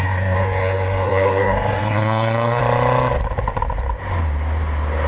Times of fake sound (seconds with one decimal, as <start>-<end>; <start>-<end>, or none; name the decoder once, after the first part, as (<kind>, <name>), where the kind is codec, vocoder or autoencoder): 0.0-2.6 (codec, SNAC)